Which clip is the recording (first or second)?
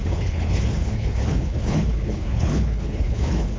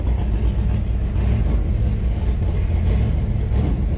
second